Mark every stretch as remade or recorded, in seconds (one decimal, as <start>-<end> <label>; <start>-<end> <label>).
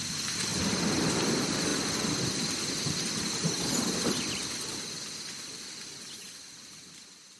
0.0-0.5 remade; 0.5-1.1 recorded; 1.1-7.4 remade